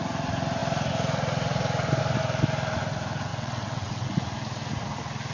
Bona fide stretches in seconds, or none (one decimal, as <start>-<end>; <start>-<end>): 0.0-3.3; 4.2-5.3